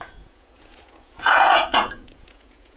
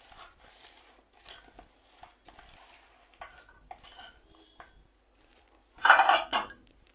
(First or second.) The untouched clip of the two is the second